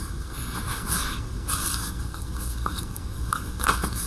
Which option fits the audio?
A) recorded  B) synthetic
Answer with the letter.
B